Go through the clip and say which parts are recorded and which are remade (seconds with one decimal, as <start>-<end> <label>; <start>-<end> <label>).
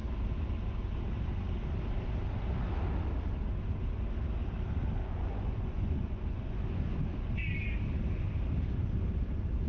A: 0.0-5.0 recorded; 5.0-7.3 remade; 7.3-9.7 recorded